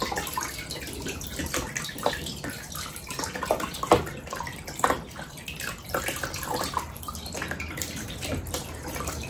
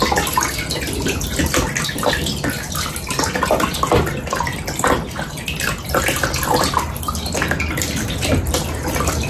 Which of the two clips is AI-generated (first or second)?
first